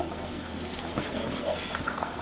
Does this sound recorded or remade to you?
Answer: remade